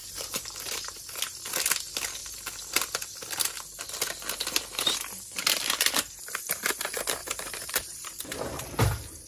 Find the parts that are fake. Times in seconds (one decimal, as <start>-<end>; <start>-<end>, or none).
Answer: 0.0-1.5; 7.2-8.4

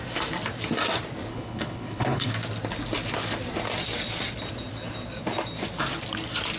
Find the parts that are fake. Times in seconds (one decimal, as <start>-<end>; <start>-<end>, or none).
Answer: 1.3-2.3